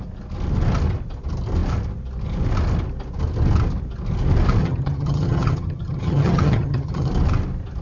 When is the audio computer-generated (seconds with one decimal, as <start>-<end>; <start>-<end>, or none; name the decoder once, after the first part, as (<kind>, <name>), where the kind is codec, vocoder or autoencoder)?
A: 4.6-7.1 (vocoder, HiFi-GAN)